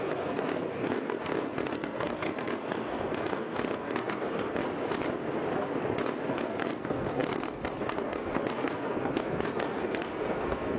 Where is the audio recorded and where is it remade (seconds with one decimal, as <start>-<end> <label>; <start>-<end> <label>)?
0.0-4.6 remade; 4.6-6.3 recorded; 6.3-10.8 remade